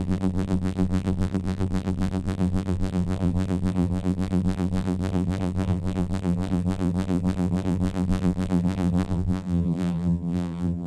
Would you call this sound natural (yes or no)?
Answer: no